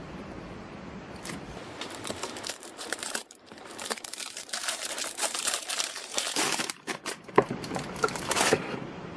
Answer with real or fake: fake